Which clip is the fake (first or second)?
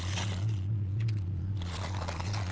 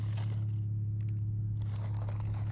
first